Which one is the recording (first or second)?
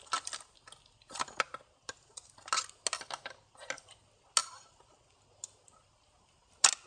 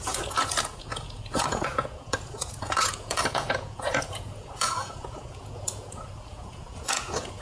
first